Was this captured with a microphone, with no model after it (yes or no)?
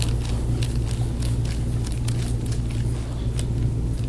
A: yes